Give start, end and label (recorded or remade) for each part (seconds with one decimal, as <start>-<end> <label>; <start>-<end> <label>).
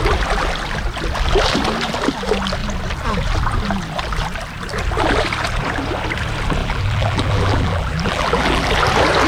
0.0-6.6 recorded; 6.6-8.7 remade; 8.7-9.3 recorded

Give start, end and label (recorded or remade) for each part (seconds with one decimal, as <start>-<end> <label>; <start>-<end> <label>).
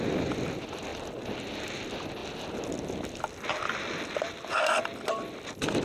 0.0-5.8 recorded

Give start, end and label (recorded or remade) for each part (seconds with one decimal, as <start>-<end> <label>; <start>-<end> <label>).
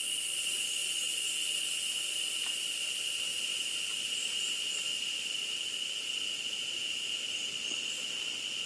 0.0-8.7 recorded